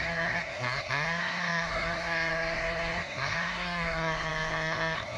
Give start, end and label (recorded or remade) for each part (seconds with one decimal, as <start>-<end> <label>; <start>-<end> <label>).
0.0-5.2 remade